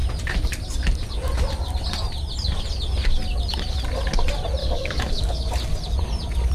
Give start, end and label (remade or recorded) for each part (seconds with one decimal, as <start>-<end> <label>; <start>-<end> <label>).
0.0-4.6 recorded; 4.6-5.5 remade; 5.5-6.5 recorded